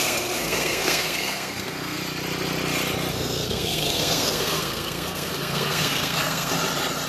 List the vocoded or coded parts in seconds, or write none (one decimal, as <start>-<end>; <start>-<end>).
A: 0.0-2.0; 3.1-6.5